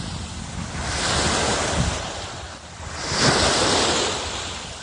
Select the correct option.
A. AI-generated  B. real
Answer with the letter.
B